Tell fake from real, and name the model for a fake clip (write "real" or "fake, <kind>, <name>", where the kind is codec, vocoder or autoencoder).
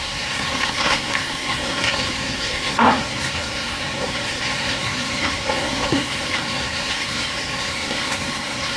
fake, codec, SNAC